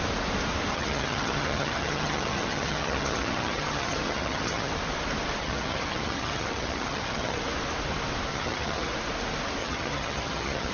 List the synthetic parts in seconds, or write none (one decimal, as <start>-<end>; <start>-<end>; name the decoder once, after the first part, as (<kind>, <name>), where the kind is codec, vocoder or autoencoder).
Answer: 0.7-4.7 (vocoder, HiFi-GAN); 5.4-7.4; 8.3-8.9; 9.6-10.7